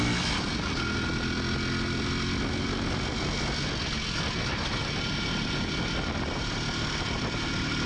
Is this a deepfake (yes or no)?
no